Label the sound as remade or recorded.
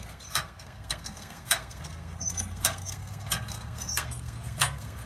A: remade